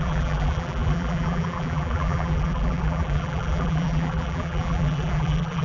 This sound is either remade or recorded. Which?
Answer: remade